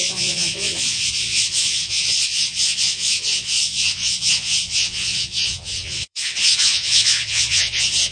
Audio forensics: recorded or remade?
remade